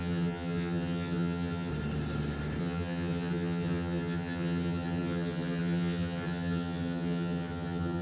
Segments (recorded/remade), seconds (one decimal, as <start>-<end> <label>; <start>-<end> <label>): 0.0-1.7 remade; 1.7-2.6 recorded; 2.6-8.0 remade